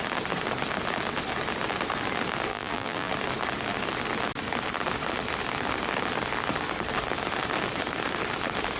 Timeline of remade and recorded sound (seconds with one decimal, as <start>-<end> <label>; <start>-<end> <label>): 0.0-2.5 recorded; 2.5-3.1 remade; 3.1-8.8 recorded